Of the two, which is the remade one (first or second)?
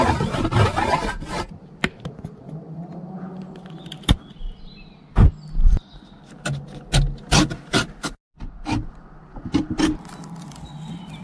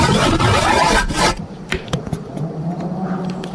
second